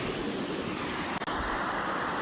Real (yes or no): yes